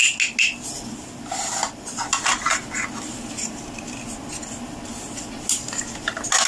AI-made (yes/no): no